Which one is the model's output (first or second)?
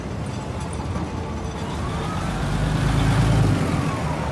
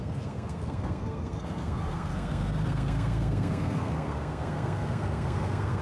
second